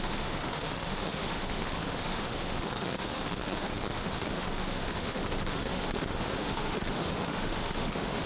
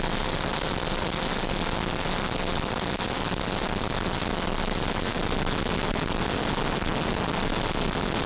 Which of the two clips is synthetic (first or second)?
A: first